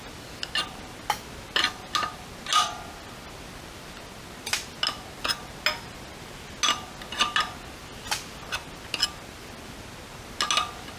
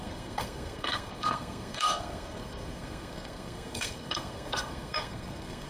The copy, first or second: second